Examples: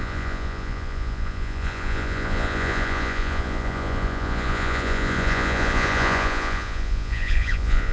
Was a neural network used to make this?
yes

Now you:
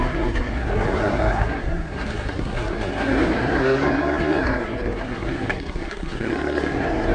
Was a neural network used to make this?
yes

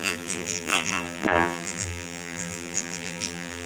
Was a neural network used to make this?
yes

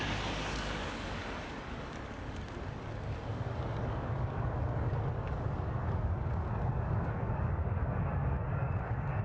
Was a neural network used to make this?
yes